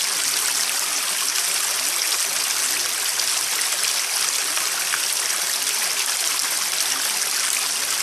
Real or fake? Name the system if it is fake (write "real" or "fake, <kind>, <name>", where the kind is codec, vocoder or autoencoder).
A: real